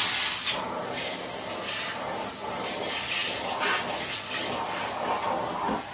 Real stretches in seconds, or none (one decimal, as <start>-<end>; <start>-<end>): 0.0-5.9